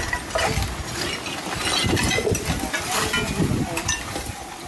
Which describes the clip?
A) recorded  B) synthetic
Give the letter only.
A